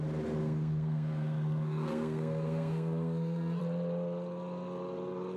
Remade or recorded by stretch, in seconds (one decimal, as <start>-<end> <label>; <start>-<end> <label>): 0.0-0.4 recorded; 0.4-3.6 remade; 3.6-5.4 recorded